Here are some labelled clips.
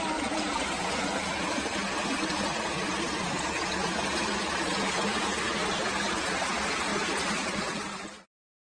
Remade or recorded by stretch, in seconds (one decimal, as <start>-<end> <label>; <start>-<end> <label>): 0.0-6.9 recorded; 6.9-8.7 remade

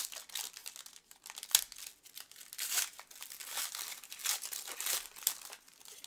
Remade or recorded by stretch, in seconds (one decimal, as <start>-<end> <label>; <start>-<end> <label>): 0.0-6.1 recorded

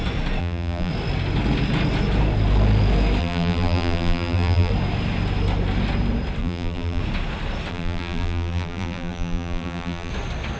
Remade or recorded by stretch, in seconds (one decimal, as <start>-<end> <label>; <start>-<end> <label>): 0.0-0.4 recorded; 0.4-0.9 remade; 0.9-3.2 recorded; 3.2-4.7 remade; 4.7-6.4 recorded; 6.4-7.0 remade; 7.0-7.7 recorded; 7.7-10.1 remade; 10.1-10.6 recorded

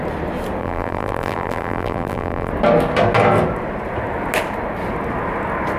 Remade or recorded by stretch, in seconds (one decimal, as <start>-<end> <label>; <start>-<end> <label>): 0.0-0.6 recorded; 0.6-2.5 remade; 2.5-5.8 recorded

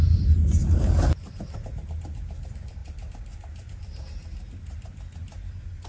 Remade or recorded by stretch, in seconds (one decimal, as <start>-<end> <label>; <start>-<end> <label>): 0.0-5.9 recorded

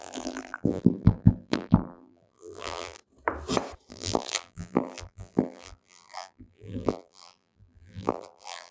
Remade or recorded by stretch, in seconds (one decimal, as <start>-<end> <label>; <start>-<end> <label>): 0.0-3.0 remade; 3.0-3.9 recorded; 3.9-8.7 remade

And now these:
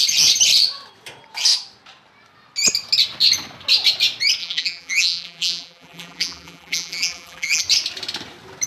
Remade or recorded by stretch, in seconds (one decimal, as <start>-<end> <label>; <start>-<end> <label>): 0.0-4.4 recorded; 4.4-7.6 remade; 7.6-8.7 recorded